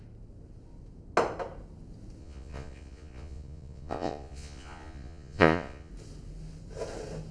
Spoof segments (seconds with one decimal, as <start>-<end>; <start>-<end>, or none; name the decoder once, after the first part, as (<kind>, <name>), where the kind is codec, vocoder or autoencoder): 2.2-5.9 (vocoder, Vocos)